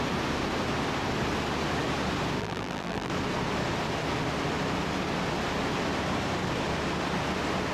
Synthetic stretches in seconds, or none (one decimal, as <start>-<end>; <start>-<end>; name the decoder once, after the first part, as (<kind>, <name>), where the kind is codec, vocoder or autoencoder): 2.4-3.1 (vocoder, BigVGAN v2)